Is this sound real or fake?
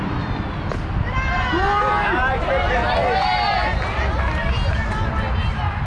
real